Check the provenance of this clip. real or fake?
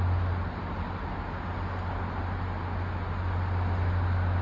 real